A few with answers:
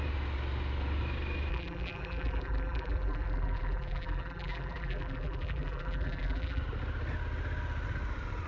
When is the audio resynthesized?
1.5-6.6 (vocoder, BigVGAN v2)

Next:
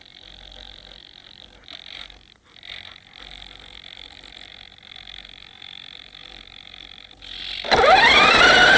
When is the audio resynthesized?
none

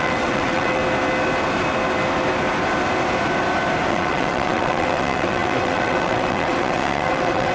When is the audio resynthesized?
0.0-0.8 (vocoder, WaveNeXt); 3.9-7.5

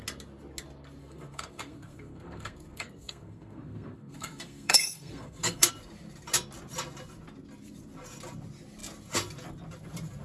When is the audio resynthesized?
1.0-5.7 (codec, SNAC)

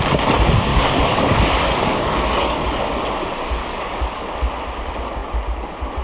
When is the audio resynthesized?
0.7-2.8 (codec, DAC); 3.6-4.2

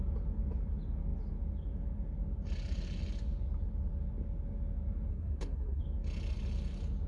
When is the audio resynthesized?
5.1-5.8 (codec, SNAC)

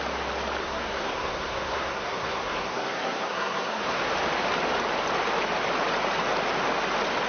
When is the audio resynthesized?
0.6-4.1 (codec, SNAC)

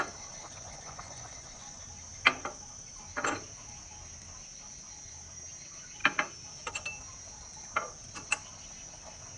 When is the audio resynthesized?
0.5-1.8 (vocoder, Vocos)